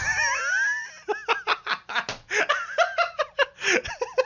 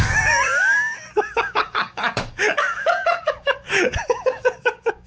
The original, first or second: first